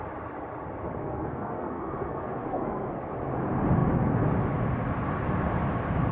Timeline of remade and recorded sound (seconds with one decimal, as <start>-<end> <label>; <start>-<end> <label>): 0.0-1.0 recorded; 1.0-3.0 remade; 3.0-6.1 recorded

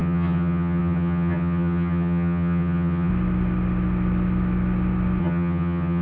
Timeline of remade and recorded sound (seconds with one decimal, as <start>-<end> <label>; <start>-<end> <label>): 0.0-3.1 remade; 3.1-5.2 recorded; 5.2-6.0 remade

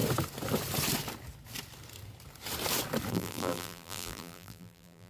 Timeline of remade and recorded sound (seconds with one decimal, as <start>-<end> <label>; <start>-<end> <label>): 0.0-3.1 recorded; 3.1-5.1 remade